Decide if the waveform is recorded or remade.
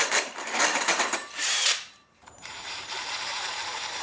remade